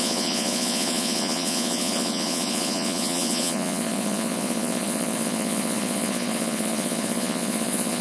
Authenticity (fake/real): fake